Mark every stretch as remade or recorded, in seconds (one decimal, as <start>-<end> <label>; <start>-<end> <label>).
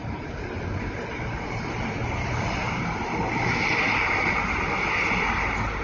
0.0-5.8 recorded